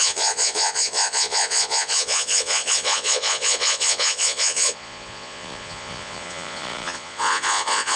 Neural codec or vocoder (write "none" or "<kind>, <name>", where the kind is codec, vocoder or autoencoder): vocoder, Vocos